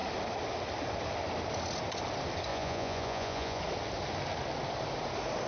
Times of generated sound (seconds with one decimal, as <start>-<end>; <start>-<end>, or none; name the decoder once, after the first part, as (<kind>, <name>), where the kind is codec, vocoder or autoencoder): 2.5-3.6 (vocoder, Vocos)